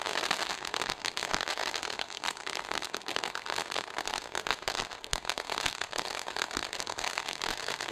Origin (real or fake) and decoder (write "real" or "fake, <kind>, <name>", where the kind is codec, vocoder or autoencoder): fake, codec, SNAC